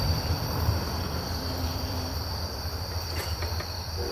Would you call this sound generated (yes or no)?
yes